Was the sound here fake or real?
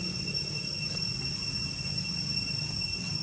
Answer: real